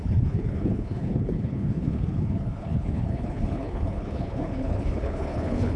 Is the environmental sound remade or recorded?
remade